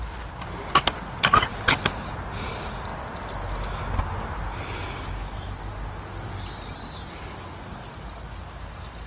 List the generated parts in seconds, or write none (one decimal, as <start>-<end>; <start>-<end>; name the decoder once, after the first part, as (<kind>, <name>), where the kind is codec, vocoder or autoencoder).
none